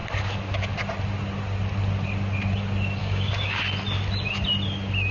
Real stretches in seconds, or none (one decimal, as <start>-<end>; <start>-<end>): 0.0-3.0; 3.6-5.1